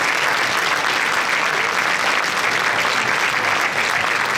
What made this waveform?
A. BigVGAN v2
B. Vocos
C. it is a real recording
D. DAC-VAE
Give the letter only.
C